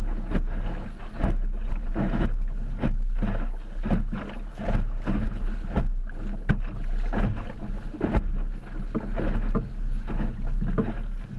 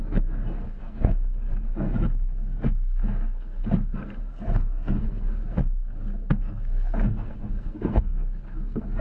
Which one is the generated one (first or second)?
second